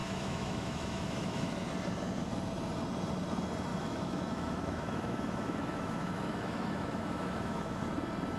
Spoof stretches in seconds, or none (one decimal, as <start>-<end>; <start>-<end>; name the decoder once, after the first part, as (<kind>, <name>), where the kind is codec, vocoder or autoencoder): 0.0-1.5 (autoencoder, DAC-VAE); 3.7-7.8